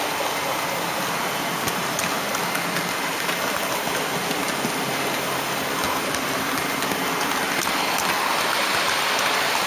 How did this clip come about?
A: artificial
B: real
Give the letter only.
B